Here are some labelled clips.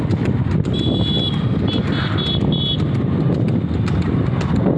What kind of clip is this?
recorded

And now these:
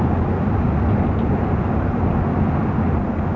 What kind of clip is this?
recorded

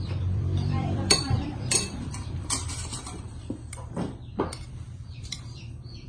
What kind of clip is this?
remade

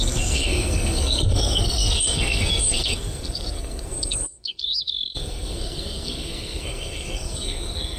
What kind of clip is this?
remade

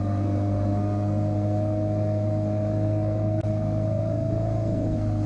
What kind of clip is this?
remade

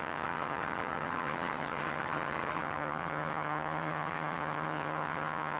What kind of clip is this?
remade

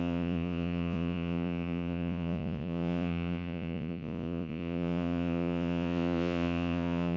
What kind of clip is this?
remade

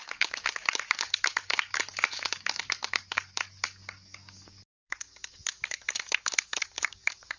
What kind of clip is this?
remade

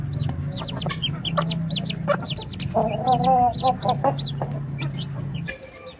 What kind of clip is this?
recorded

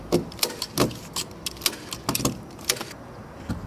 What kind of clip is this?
recorded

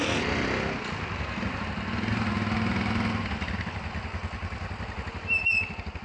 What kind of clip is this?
recorded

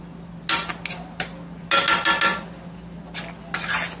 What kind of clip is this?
recorded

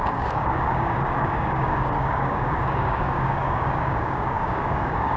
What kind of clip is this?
remade